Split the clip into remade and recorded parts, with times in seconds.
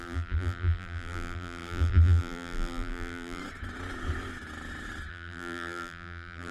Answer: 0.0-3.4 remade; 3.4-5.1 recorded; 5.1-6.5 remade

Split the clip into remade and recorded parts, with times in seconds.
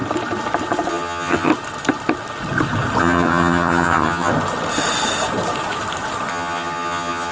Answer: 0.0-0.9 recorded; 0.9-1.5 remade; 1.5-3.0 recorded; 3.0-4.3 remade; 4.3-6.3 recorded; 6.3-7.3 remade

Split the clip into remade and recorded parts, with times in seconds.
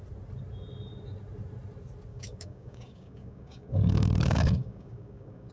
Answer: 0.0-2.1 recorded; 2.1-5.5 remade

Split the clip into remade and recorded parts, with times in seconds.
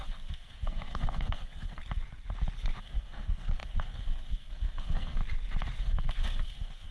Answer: 0.0-1.8 remade; 1.8-2.8 recorded; 2.8-5.2 remade; 5.2-5.8 recorded; 5.8-6.9 remade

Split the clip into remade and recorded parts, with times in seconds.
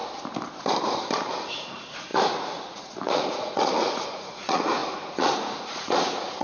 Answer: 0.0-1.3 recorded; 1.3-6.4 remade